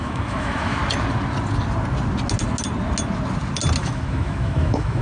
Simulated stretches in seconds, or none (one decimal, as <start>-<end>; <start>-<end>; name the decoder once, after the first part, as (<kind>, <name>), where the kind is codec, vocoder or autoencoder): 0.0-0.8 (autoencoder, DAC-VAE); 3.8-5.0